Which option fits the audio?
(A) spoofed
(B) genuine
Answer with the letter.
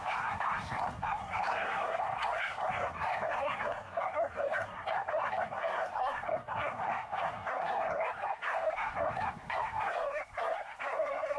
A